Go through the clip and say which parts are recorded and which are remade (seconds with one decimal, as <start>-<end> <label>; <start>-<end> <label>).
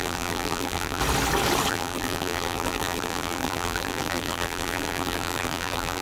0.0-1.0 remade; 1.0-1.7 recorded; 1.7-6.0 remade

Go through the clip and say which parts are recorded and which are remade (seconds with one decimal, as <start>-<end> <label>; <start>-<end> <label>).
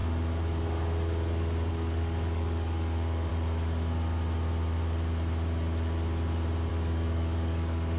0.0-1.7 recorded; 1.7-3.3 remade; 3.3-6.7 recorded; 6.7-8.0 remade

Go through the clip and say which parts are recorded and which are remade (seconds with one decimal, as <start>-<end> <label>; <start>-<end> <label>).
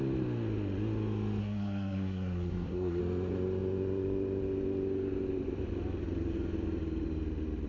0.0-1.4 recorded; 1.4-3.0 remade; 3.0-7.7 recorded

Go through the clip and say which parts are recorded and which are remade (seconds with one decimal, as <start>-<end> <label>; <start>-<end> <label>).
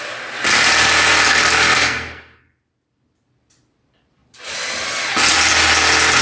0.0-1.3 recorded; 1.3-2.6 remade; 2.6-6.2 recorded